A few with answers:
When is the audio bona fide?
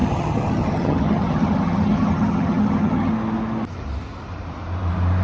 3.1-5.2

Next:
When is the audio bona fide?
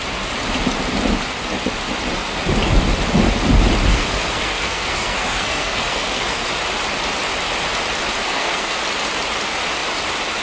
0.0-3.9; 6.5-8.2; 8.8-10.4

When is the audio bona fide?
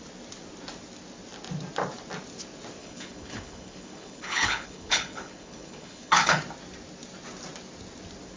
0.0-2.8; 6.4-8.4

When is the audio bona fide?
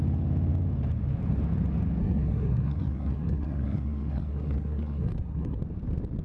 0.0-2.0; 5.6-6.2